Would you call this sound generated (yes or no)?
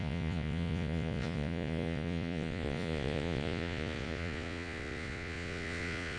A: yes